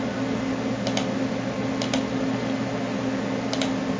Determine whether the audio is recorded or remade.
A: recorded